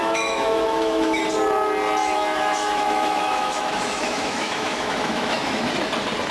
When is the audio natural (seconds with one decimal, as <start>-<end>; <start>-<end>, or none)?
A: 1.2-2.0; 5.7-6.3